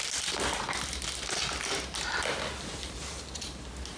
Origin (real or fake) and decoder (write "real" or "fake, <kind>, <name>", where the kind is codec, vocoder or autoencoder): real